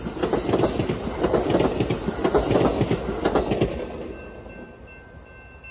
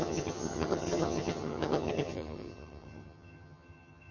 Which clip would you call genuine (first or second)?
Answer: first